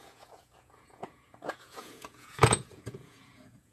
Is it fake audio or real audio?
fake